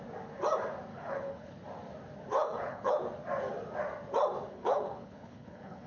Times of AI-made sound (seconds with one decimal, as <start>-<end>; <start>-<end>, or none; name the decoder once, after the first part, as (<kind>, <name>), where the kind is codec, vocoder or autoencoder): 0.9-1.5 (codec, HILCodec); 2.3-3.0; 4.5-5.9